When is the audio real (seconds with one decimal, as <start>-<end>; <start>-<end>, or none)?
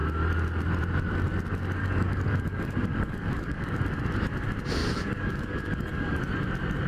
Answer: 0.0-1.8; 4.0-4.8; 6.2-6.9